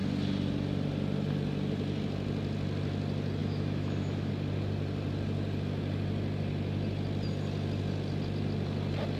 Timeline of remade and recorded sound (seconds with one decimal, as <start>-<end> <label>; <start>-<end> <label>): 0.0-3.4 recorded; 3.4-4.3 remade; 4.3-9.2 recorded